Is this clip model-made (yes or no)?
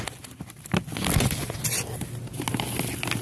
no